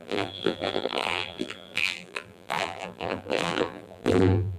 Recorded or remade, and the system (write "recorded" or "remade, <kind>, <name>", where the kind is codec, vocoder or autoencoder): remade, vocoder, BigVGAN v2